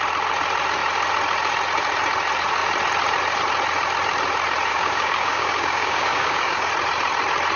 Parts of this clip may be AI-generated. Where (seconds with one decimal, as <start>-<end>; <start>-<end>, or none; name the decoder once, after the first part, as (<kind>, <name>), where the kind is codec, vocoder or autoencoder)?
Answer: 4.7-6.7 (codec, DAC)